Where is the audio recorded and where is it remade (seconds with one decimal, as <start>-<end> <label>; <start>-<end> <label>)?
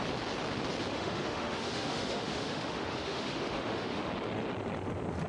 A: 0.0-0.9 recorded; 0.9-4.1 remade; 4.1-5.3 recorded